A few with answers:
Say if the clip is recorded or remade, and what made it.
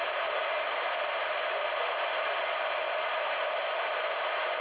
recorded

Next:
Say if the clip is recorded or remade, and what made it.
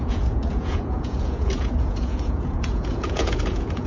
remade, vocoder, Vocos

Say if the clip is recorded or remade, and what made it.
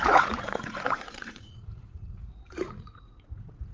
remade, vocoder, Vocos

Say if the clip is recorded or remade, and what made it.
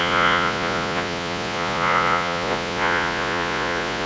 remade, vocoder, Vocos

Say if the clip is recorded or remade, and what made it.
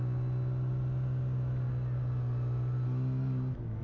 recorded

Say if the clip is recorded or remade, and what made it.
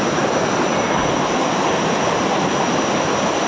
recorded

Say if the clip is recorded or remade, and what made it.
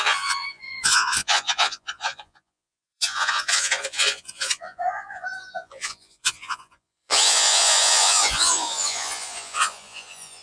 remade, vocoder, Vocos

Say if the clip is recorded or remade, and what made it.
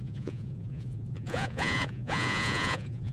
remade, vocoder, Vocos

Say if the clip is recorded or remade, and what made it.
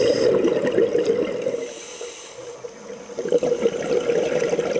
recorded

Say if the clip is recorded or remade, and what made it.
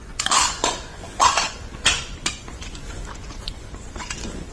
remade, vocoder, Vocos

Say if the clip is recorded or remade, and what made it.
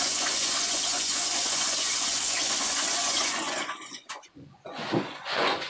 remade, vocoder, Vocos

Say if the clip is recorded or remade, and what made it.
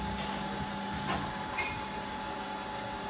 recorded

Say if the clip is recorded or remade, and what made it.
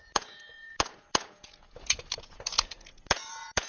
remade, vocoder, Vocos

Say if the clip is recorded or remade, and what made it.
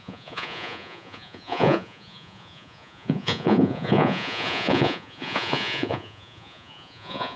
remade, vocoder, Vocos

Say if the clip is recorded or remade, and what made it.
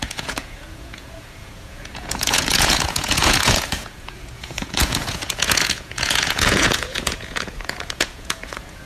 remade, vocoder, Vocos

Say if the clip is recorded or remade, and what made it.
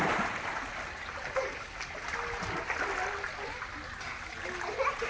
recorded